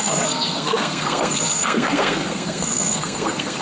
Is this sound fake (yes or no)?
yes